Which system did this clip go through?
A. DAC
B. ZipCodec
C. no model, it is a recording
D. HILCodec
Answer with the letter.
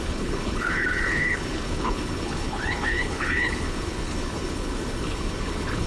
D